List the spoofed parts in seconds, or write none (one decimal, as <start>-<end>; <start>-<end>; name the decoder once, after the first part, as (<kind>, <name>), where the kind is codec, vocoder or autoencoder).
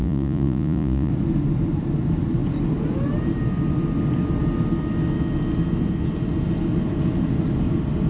0.0-1.1 (vocoder, Vocos)